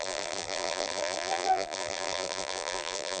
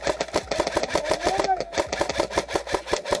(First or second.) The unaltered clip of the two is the second